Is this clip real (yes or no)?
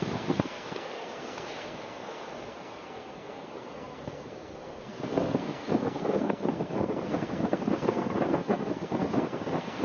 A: no